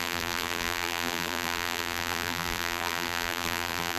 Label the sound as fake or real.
fake